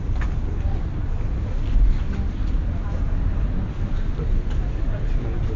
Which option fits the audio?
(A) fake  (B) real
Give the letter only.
B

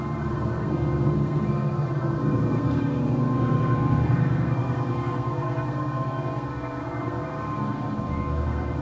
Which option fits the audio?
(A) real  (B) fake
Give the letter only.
B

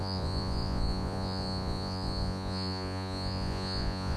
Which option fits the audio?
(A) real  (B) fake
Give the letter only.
B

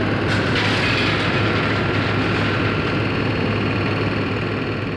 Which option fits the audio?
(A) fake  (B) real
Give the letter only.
B